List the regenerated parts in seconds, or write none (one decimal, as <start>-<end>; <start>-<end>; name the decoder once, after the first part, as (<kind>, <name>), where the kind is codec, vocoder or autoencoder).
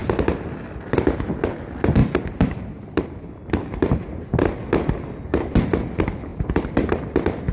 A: 2.0-3.5 (vocoder, BigVGAN v2); 6.3-7.0